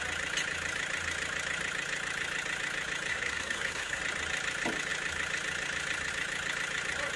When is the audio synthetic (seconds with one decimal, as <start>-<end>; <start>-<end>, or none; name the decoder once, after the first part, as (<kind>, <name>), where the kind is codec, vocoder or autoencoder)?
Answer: 3.1-4.0 (codec, SNAC)